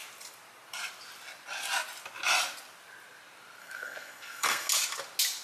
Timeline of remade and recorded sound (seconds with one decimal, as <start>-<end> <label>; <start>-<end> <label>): 0.0-3.6 recorded; 3.6-4.7 remade; 4.7-5.4 recorded